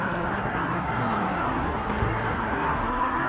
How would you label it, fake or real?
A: fake